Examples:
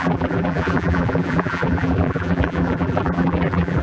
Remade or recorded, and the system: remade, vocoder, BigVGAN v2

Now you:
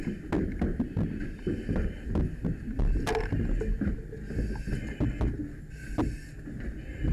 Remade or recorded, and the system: recorded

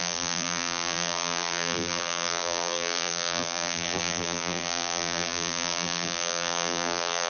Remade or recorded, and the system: remade, vocoder, BigVGAN v2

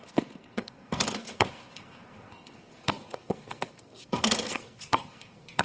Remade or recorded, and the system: remade, codec, SNAC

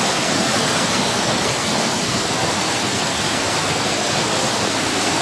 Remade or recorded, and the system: remade, codec, SNAC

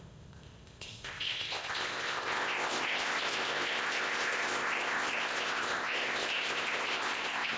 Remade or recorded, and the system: remade, codec, ZipCodec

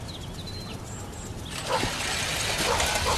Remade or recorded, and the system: recorded